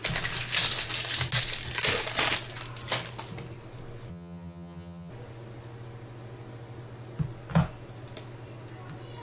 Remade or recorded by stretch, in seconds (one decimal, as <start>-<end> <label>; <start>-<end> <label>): 0.0-4.1 recorded; 4.1-5.1 remade; 5.1-9.2 recorded

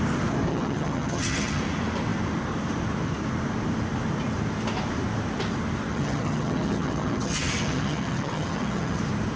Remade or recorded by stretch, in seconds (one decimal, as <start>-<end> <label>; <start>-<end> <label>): 0.0-0.5 recorded; 0.5-1.6 remade; 1.6-5.9 recorded; 5.9-9.0 remade; 9.0-9.4 recorded